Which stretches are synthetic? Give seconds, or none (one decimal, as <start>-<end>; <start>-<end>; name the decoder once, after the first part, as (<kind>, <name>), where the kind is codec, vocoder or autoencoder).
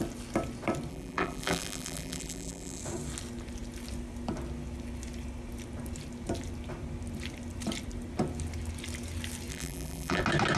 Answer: 0.9-2.8 (vocoder, BigVGAN v2); 9.5-10.2